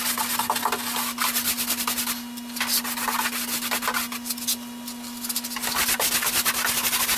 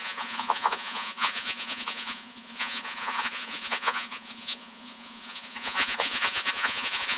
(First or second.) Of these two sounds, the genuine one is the first